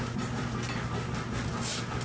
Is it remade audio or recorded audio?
recorded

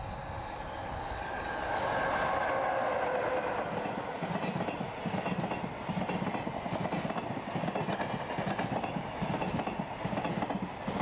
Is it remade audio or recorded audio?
recorded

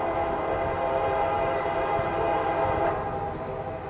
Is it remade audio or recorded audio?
recorded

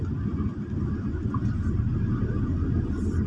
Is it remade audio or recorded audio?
recorded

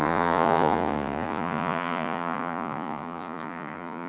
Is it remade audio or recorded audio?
remade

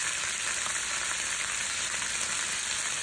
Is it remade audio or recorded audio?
recorded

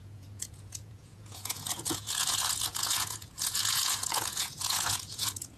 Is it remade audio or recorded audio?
remade